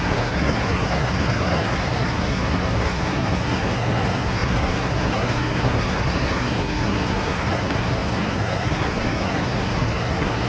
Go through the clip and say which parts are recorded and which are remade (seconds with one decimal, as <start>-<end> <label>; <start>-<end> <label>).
0.0-10.5 remade